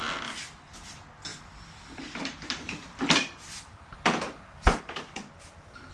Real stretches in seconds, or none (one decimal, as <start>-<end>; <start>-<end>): 0.0-1.3; 4.8-5.9